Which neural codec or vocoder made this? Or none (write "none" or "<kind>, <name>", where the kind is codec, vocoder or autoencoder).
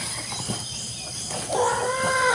none